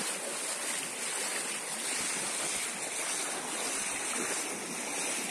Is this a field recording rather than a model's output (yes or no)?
yes